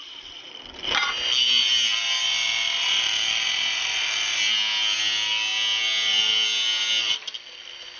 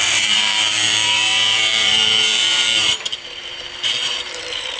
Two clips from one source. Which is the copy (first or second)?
second